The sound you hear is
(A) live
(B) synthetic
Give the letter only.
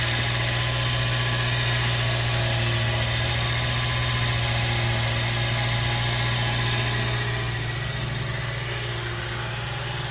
A